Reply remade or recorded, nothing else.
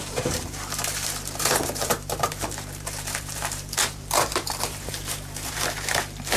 remade